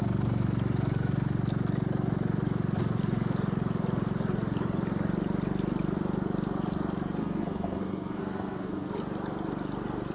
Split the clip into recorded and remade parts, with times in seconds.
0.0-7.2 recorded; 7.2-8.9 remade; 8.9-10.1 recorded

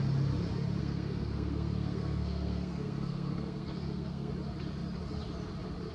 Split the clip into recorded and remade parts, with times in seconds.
0.0-0.8 recorded; 0.8-4.3 remade; 4.3-5.9 recorded

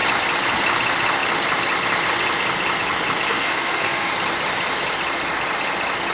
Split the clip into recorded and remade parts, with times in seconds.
0.0-3.3 recorded; 3.3-4.1 remade; 4.1-6.1 recorded

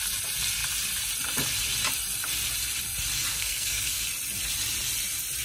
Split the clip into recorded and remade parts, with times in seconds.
0.0-3.3 recorded; 3.3-4.0 remade; 4.0-5.4 recorded

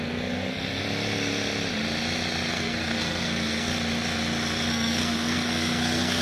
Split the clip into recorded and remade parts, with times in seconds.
0.0-0.8 remade; 0.8-2.5 recorded; 2.5-3.7 remade; 3.7-4.7 recorded; 4.7-6.2 remade